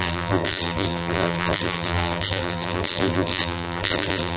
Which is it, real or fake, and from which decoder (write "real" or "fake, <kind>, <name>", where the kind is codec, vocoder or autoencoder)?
fake, vocoder, BigVGAN v2